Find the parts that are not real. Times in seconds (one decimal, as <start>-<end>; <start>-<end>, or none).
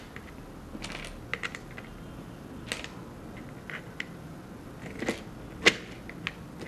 none